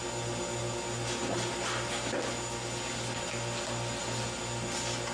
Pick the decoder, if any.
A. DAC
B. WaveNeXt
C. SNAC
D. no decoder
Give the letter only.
D